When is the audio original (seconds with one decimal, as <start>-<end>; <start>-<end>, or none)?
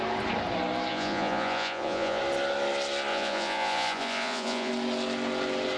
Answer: 0.0-0.9; 2.2-3.1; 4.7-5.8